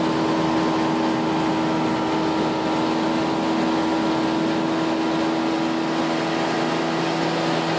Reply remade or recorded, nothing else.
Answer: recorded